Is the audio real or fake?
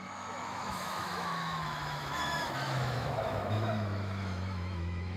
fake